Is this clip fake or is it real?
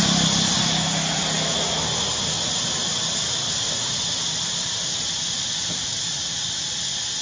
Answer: real